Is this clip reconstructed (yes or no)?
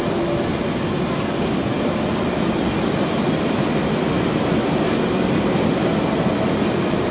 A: no